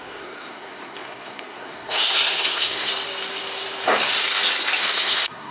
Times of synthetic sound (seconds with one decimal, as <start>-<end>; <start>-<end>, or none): 0.0-2.9; 4.8-5.5